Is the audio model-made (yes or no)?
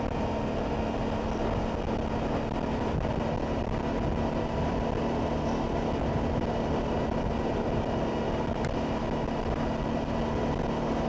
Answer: no